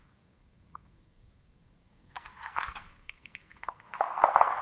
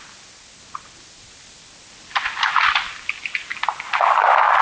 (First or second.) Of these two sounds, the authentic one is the second